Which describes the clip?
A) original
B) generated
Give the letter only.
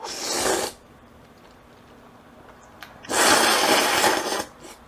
A